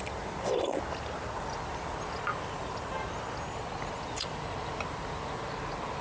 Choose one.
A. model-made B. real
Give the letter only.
B